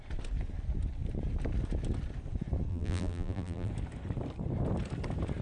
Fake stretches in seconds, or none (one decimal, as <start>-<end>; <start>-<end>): 2.7-3.7